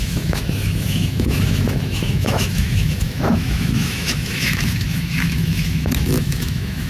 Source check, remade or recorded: remade